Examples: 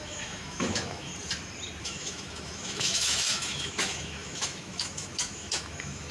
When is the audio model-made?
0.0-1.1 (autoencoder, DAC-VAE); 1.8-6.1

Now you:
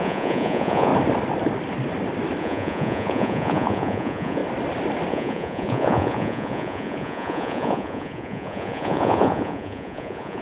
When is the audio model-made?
0.0-0.9 (vocoder, Vocos); 2.4-4.4; 5.1-10.4

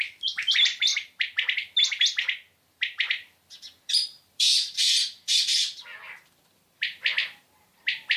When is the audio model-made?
0.0-0.9 (vocoder, BigVGAN v2); 2.6-8.2

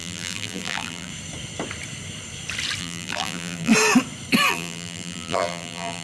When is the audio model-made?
0.0-1.1 (vocoder, BigVGAN v2); 2.8-3.7; 4.5-6.0

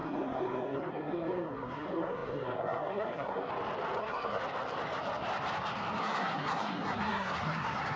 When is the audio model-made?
0.0-3.5 (codec, SNAC); 4.0-4.4; 6.0-8.0

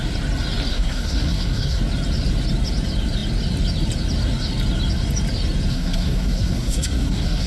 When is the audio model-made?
0.7-1.8 (codec, SNAC); 5.7-7.5

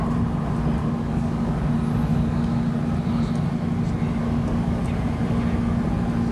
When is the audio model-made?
0.8-1.7 (codec, DAC); 2.1-2.8; 4.2-4.8